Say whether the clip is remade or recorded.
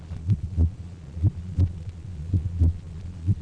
remade